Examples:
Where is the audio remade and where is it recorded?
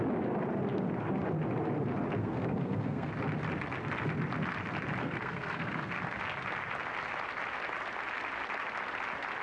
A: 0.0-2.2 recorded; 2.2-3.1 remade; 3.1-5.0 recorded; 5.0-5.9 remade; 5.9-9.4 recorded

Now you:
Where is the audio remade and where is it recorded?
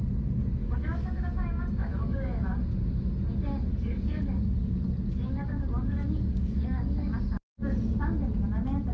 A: 0.0-0.6 recorded; 0.6-1.2 remade; 1.2-1.8 recorded; 1.8-2.6 remade; 2.6-3.7 recorded; 3.7-7.1 remade; 7.1-8.9 recorded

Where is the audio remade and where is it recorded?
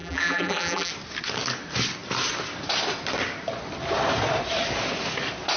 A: 0.0-0.9 remade; 0.9-5.6 recorded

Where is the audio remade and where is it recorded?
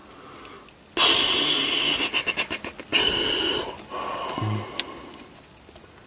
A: 0.0-6.1 recorded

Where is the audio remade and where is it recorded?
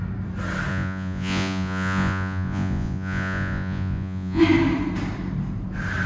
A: 0.0-0.7 recorded; 0.7-4.4 remade; 4.4-6.1 recorded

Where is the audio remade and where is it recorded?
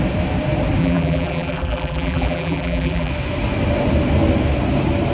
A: 0.0-0.8 recorded; 0.8-3.1 remade; 3.1-5.1 recorded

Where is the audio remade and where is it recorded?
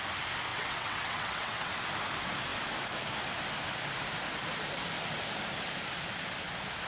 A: 0.0-0.5 recorded; 0.5-1.7 remade; 1.7-6.9 recorded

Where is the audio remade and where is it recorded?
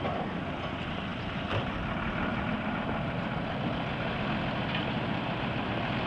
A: 0.0-6.1 recorded